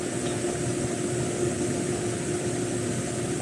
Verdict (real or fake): real